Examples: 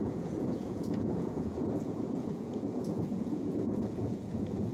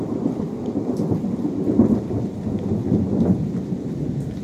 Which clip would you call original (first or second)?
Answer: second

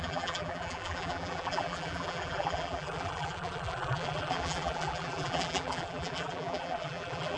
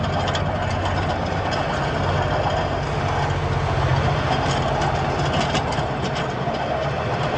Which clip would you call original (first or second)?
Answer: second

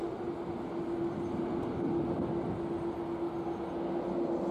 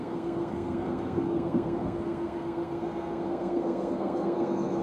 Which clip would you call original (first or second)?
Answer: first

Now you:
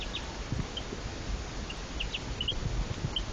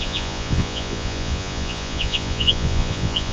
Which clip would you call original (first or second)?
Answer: first